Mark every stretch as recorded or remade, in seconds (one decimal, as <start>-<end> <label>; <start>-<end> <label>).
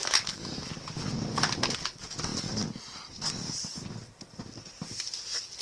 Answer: 0.0-0.7 remade; 0.7-5.6 recorded